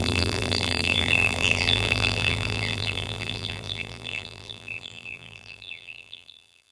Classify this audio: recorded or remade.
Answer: remade